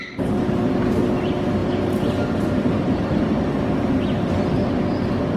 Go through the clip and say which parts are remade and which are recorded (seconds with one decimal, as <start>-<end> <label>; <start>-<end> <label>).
0.0-5.4 recorded